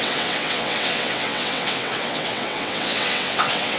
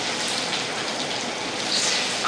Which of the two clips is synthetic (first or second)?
first